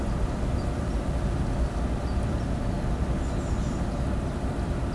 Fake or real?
real